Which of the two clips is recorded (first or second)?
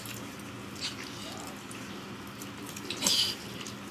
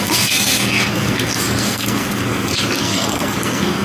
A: first